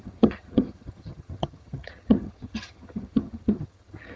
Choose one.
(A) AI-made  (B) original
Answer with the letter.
A